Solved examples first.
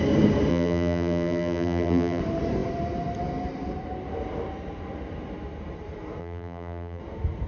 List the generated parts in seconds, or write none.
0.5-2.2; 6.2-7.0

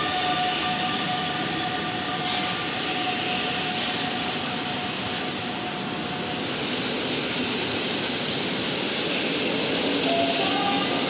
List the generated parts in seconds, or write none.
none

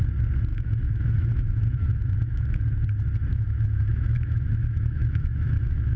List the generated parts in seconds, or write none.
0.5-2.6; 3.3-6.0

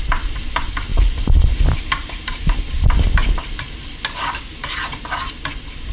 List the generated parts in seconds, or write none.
none